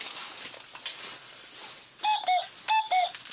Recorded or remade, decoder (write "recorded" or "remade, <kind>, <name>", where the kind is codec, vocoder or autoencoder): recorded